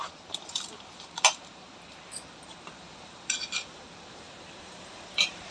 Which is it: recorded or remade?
remade